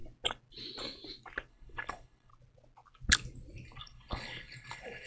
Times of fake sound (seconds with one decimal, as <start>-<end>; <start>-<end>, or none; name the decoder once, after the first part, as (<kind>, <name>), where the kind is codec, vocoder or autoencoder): 1.5-2.3 (codec, HILCodec); 3.8-5.1